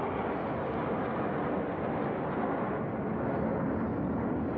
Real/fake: real